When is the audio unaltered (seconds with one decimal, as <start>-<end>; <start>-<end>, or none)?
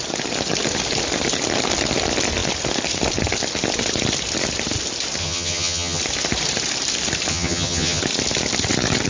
0.0-5.2; 6.0-7.3; 8.0-9.1